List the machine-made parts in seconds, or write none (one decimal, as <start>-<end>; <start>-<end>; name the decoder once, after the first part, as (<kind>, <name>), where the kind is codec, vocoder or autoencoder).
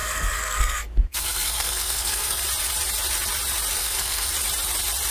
0.0-2.4 (codec, SNAC); 3.8-4.3